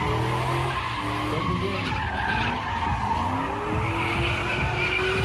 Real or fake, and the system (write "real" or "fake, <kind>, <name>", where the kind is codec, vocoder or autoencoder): real